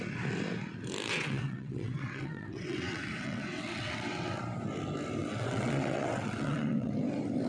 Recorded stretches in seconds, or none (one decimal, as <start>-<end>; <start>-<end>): 0.0-1.1; 4.4-5.2; 6.9-7.5